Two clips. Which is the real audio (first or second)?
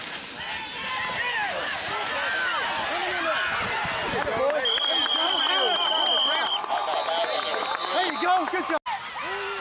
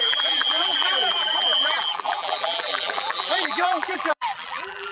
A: first